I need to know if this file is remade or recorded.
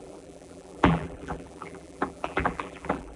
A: remade